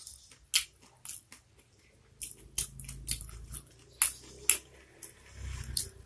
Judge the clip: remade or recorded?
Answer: recorded